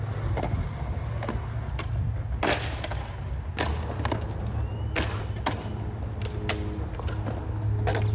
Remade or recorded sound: recorded